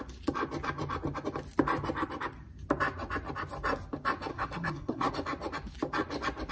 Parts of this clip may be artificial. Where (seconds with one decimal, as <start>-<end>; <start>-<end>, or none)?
4.3-5.1